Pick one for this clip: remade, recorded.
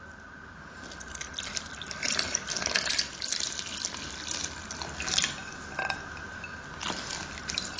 recorded